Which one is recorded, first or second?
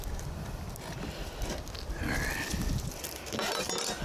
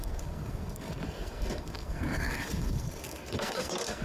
first